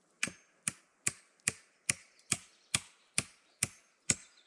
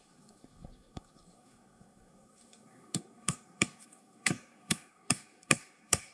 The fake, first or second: second